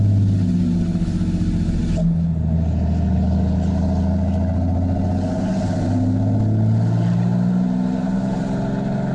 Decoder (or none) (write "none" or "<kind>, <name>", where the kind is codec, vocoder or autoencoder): none